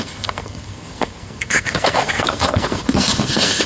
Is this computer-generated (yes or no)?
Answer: yes